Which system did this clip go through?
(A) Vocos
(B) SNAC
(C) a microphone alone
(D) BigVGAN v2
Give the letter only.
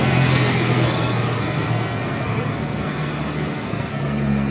B